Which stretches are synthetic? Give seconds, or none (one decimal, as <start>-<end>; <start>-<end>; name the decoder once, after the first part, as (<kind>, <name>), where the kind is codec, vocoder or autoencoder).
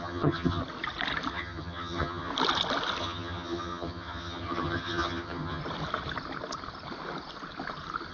0.0-0.6 (vocoder, HiFi-GAN); 1.3-2.3; 3.0-5.6